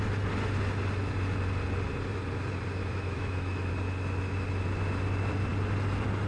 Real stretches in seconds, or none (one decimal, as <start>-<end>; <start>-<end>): 0.0-2.8; 3.7-6.3